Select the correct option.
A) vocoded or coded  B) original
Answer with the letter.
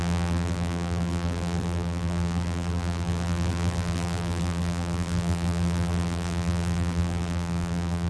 A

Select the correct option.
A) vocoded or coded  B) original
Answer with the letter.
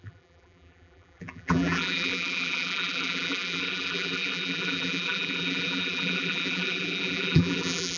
A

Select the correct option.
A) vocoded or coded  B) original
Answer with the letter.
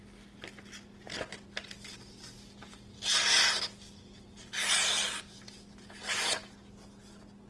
B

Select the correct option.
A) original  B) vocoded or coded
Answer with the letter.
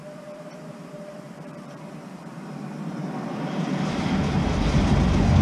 B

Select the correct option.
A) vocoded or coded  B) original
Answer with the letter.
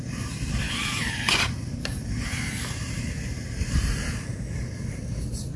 A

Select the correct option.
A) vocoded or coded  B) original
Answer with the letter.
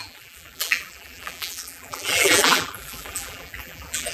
A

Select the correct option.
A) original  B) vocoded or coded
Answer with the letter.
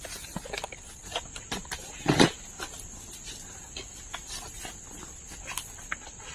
A